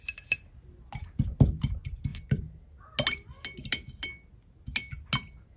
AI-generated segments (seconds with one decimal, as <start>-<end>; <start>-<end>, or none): none